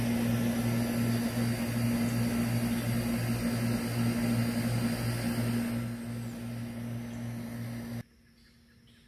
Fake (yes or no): no